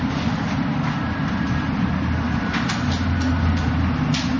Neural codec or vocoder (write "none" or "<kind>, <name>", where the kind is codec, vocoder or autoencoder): none